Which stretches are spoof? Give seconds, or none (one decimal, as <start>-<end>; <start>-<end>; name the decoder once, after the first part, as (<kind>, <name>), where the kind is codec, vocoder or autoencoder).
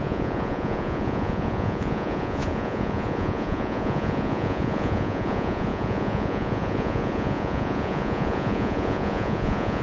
0.0-9.8 (vocoder, Vocos)